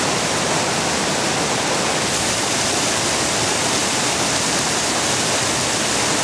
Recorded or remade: recorded